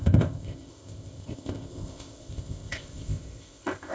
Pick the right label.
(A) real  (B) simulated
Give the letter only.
B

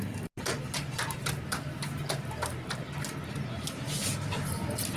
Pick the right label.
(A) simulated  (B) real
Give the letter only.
B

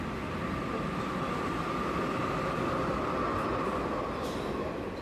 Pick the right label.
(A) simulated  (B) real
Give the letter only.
B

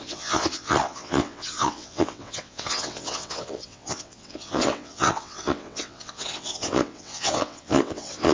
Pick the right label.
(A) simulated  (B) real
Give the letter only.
A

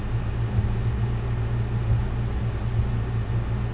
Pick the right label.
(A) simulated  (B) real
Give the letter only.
B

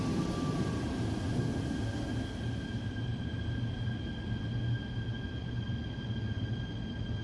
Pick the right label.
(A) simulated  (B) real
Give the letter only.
B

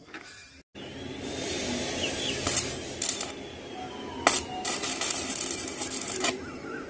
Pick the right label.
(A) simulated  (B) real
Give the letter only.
B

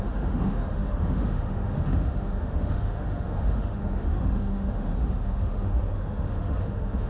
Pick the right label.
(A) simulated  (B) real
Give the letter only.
A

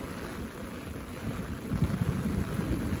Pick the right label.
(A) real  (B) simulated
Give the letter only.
A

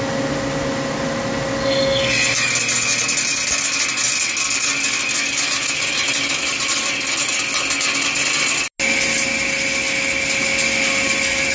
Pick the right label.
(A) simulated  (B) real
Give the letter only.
B